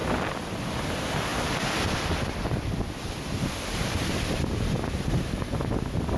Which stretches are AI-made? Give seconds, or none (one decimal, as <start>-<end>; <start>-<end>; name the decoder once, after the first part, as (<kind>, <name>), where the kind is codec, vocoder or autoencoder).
0.0-0.6 (vocoder, BigVGAN v2); 1.3-5.0